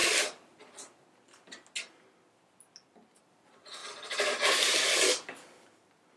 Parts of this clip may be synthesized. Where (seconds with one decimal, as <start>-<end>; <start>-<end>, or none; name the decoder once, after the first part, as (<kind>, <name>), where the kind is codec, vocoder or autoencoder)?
none